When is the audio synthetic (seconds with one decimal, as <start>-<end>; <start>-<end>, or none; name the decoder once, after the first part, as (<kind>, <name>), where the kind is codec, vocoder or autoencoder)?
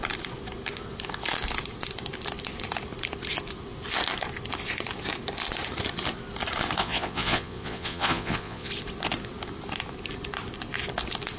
6.8-8.7 (vocoder, Vocos)